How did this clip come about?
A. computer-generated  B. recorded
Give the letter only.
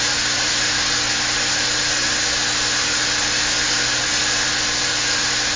B